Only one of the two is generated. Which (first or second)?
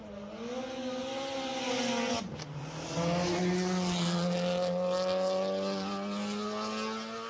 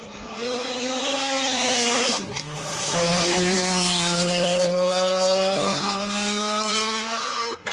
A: second